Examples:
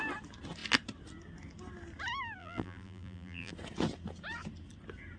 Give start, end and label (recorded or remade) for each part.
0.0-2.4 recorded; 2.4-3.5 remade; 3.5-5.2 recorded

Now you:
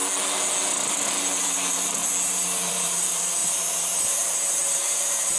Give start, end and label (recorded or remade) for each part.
0.0-1.4 recorded; 1.4-2.0 remade; 2.0-2.7 recorded; 2.7-5.4 remade

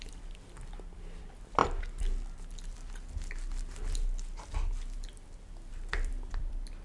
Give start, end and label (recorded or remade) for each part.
0.0-1.6 remade; 1.6-5.7 recorded; 5.7-6.8 remade